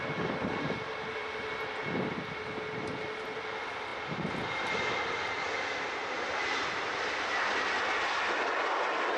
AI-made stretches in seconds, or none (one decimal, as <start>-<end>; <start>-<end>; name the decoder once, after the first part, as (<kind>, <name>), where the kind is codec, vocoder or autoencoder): none